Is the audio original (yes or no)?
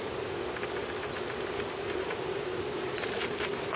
no